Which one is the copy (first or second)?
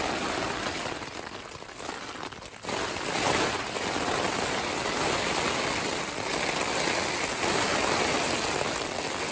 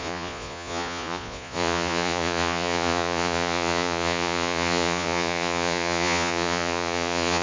second